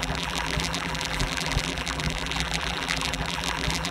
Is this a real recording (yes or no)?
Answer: no